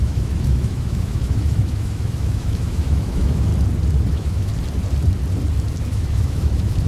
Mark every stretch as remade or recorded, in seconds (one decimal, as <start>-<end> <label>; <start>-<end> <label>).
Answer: 0.0-3.5 remade; 3.5-4.1 recorded; 4.1-4.5 remade; 4.5-5.8 recorded; 5.8-6.9 remade